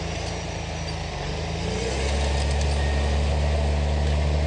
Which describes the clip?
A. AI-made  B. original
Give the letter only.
B